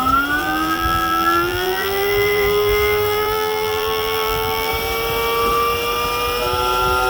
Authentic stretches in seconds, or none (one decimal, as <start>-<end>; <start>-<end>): 0.0-0.4; 4.7-7.1